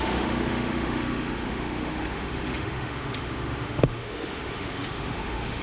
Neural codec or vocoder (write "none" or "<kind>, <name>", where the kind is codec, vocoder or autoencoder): autoencoder, DAC-VAE